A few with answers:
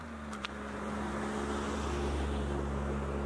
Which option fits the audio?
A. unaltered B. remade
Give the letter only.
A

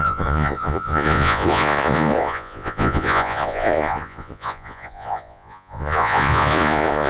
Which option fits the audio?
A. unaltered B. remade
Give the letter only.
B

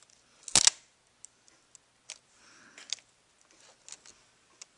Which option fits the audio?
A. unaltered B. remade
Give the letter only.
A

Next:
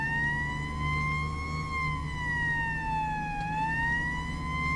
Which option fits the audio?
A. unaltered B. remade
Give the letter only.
A